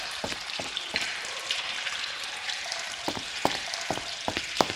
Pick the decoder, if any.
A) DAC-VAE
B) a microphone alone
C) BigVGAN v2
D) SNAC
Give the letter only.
C